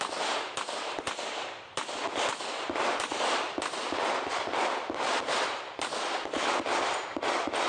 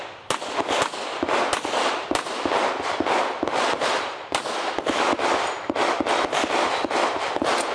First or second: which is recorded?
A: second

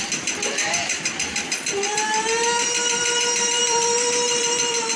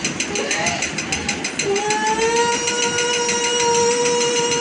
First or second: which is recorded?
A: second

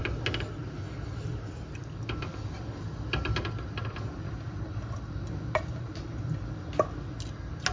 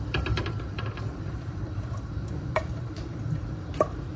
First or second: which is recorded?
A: first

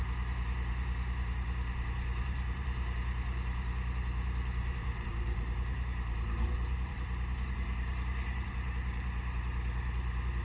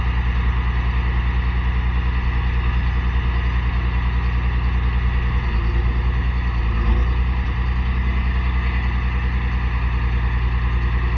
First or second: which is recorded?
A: second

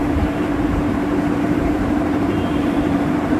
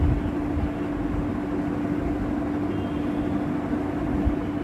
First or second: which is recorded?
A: second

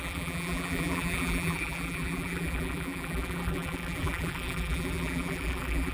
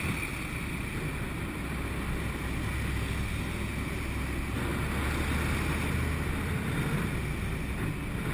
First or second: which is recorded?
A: second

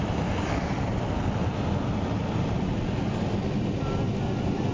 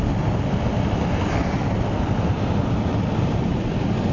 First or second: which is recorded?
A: first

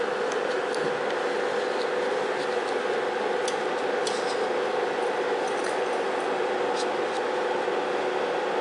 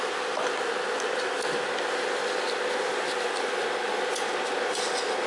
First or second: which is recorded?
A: first